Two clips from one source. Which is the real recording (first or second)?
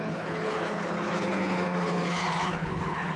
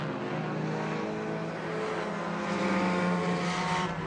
second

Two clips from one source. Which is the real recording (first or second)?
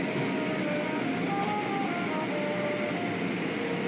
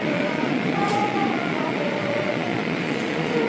first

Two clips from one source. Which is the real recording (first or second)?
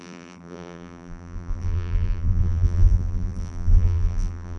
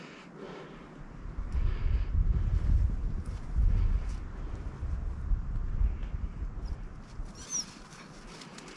second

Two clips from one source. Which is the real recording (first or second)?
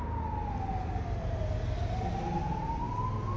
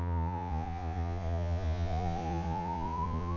first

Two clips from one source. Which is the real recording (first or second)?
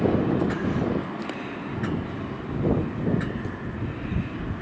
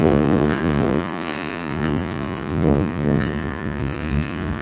first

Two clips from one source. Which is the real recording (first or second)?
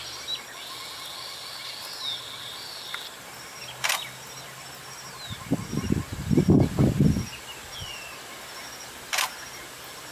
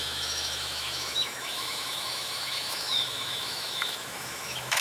first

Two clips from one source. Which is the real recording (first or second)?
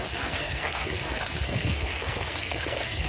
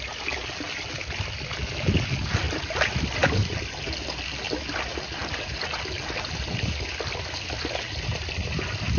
second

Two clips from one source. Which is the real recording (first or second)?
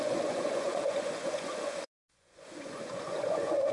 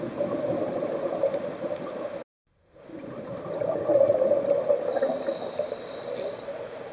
second